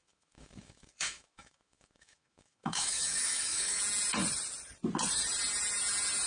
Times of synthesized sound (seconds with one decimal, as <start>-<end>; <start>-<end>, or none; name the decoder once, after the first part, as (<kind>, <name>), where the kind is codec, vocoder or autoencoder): 0.0-3.8 (autoencoder, DAC-VAE)